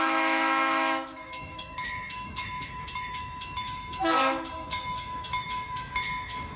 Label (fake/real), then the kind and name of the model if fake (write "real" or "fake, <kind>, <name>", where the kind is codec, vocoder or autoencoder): fake, autoencoder, DAC-VAE